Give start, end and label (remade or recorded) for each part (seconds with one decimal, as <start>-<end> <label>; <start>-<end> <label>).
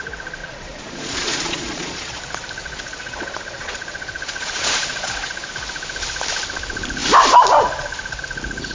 0.0-0.4 recorded; 0.4-2.2 remade; 2.2-2.6 recorded; 2.6-5.5 remade; 5.5-8.7 recorded